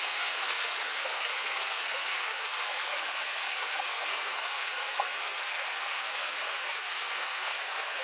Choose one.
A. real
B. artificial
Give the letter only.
B